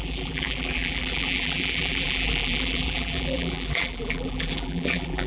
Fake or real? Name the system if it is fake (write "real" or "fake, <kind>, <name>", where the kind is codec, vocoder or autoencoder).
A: fake, vocoder, BigVGAN v2